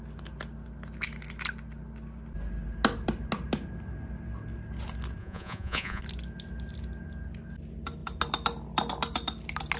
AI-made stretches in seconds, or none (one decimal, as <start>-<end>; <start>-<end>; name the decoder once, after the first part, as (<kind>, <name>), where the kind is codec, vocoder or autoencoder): 5.2-6.0 (vocoder, Vocos)